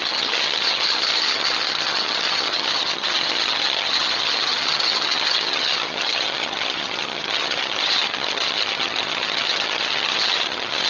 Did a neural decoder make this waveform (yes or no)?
yes